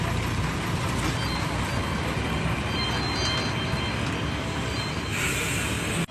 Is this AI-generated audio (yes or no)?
no